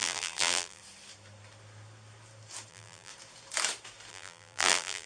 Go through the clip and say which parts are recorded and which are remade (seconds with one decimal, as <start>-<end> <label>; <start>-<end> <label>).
0.0-0.8 remade; 0.8-2.7 recorded; 2.7-3.1 remade; 3.1-4.1 recorded; 4.1-5.1 remade